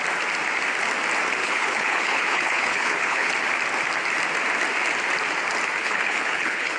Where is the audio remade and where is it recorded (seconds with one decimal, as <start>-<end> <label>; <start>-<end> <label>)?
0.0-1.4 recorded; 1.4-3.3 remade; 3.3-5.8 recorded; 5.8-6.8 remade